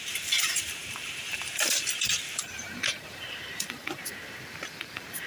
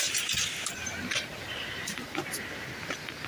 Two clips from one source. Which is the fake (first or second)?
first